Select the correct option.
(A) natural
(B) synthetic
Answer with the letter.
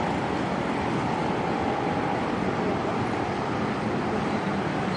B